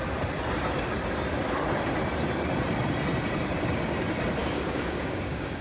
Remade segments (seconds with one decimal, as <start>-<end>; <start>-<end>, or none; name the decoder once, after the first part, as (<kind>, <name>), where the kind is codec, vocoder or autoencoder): 4.4-5.6 (codec, DAC)